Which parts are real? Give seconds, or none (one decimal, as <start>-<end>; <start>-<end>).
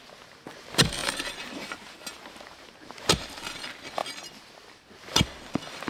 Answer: 0.0-1.0; 3.4-5.9